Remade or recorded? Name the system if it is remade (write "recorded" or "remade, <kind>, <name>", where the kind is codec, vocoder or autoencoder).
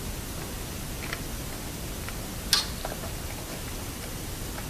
recorded